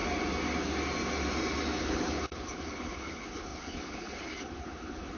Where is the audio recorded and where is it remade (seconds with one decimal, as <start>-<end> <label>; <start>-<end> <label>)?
0.0-1.8 recorded; 1.8-5.2 remade